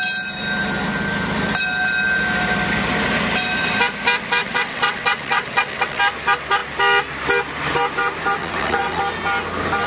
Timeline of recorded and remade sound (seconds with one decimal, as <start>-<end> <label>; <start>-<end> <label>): 0.0-4.4 recorded; 4.4-6.0 remade; 6.0-8.4 recorded; 8.4-9.0 remade; 9.0-9.9 recorded